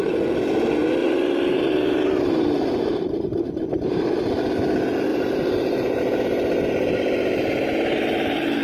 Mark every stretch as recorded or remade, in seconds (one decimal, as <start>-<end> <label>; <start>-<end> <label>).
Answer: 0.0-1.0 recorded; 1.0-4.1 remade; 4.1-5.1 recorded; 5.1-6.0 remade; 6.0-8.6 recorded

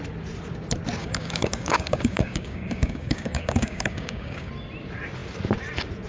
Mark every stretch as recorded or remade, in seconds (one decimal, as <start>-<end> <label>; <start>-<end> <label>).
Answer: 0.0-1.0 recorded; 1.0-4.5 remade; 4.5-6.1 recorded

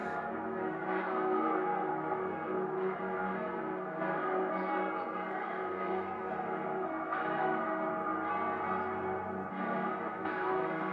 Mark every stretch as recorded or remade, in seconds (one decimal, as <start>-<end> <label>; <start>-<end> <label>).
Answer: 0.0-7.9 remade; 7.9-9.5 recorded; 9.5-10.9 remade

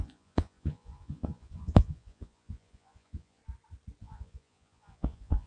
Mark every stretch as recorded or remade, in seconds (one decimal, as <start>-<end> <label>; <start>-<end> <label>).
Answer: 0.0-3.4 remade; 3.4-4.0 recorded; 4.0-5.5 remade

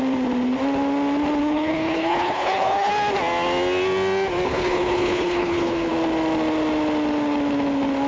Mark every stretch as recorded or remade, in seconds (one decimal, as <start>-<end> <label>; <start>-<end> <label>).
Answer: 0.0-1.4 recorded; 1.4-2.9 remade; 2.9-4.5 recorded; 4.5-5.9 remade; 5.9-8.1 recorded

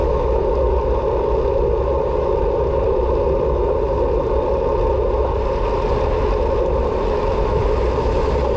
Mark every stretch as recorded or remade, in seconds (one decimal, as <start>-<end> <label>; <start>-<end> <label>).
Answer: 0.0-8.6 recorded

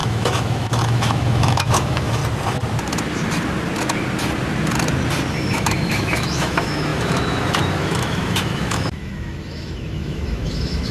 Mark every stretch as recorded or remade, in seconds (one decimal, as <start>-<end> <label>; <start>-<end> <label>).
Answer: 0.0-2.2 remade; 2.2-5.3 recorded; 5.3-10.9 remade